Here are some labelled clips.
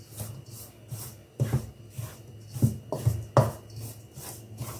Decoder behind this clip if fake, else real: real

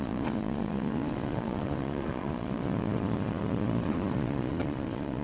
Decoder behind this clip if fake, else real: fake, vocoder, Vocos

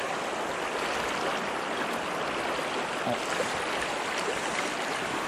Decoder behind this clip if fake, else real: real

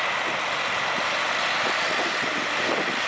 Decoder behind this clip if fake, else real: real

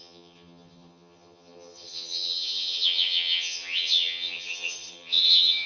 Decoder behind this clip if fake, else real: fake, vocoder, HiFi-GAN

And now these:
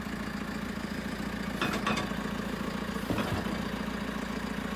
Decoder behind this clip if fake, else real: real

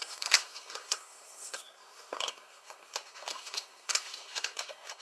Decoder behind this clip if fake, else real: fake, codec, SNAC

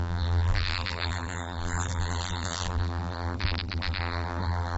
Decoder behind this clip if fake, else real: fake, vocoder, BigVGAN v2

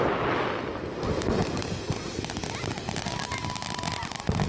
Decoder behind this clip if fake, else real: real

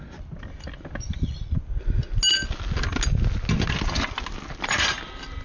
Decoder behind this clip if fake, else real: real